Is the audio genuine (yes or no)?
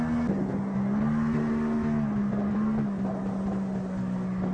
yes